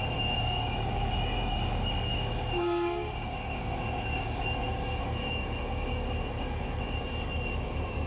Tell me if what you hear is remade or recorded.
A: remade